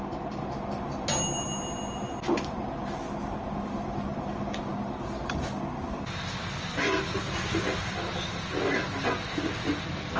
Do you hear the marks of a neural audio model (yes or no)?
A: no